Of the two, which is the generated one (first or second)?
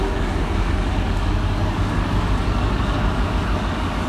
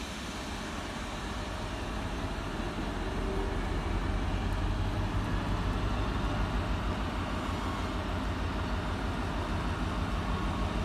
first